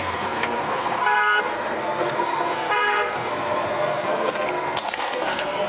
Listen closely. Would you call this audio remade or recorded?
remade